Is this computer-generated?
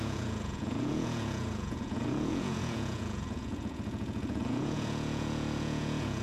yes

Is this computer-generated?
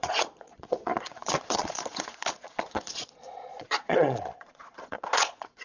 yes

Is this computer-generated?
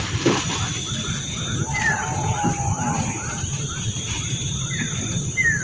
no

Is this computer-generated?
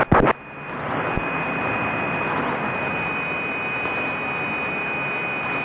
no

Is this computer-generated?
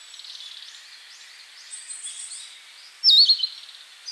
no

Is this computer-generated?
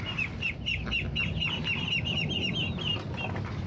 no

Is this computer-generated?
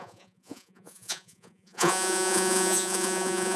yes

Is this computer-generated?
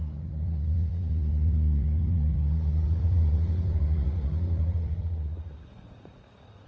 yes